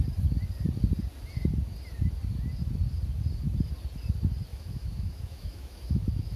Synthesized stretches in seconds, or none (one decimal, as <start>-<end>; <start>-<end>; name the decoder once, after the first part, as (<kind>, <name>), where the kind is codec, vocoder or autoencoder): 4.5-6.4 (autoencoder, DAC-VAE)